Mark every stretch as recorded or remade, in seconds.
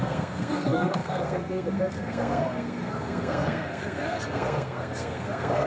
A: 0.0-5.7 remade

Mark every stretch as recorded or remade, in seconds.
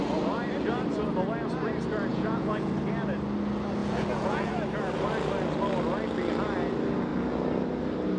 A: 0.0-2.1 recorded; 2.1-2.7 remade; 2.7-3.8 recorded; 3.8-4.5 remade; 4.5-8.2 recorded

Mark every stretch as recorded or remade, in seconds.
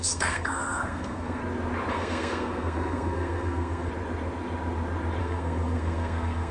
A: 0.0-1.4 remade; 1.4-1.9 recorded; 1.9-3.9 remade; 3.9-5.2 recorded; 5.2-6.5 remade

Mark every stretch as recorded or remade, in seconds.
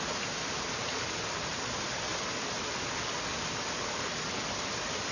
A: 0.0-5.1 recorded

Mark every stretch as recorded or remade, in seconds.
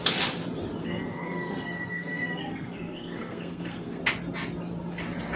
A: 0.0-0.8 recorded; 0.8-4.0 remade; 4.0-5.4 recorded